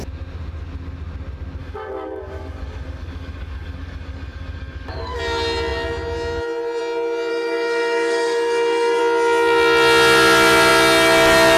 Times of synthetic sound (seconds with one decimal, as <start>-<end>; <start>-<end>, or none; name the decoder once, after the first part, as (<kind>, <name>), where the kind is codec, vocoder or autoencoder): 1.6-5.2 (codec, DAC); 7.3-9.0